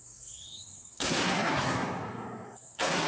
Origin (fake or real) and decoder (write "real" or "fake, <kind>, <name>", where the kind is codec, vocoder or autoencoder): fake, codec, SNAC